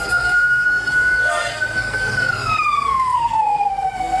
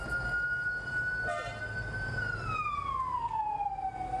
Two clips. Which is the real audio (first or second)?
second